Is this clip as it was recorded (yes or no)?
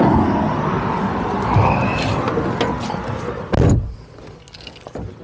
yes